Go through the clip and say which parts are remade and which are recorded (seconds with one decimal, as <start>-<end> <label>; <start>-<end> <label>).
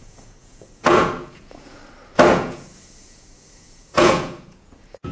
0.0-1.8 remade; 1.8-2.3 recorded; 2.3-5.1 remade